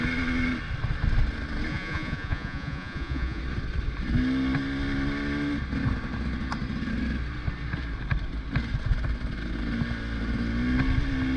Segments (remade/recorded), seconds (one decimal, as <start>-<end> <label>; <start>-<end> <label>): 0.0-1.7 recorded; 1.7-3.4 remade; 3.4-11.4 recorded